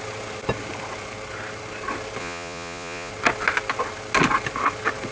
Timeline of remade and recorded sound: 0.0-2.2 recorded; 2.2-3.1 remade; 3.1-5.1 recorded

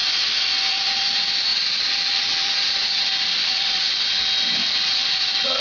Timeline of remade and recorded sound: 0.0-0.7 recorded; 0.7-4.1 remade; 4.1-4.9 recorded; 4.9-5.6 remade

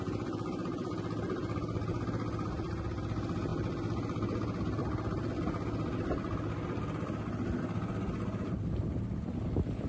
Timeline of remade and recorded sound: 0.0-9.9 recorded

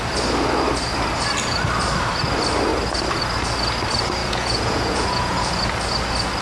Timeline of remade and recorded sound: 0.0-4.2 recorded; 4.2-5.5 remade; 5.5-6.4 recorded